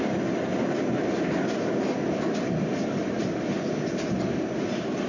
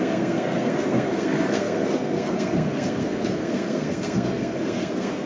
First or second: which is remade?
second